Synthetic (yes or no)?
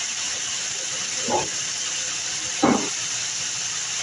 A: no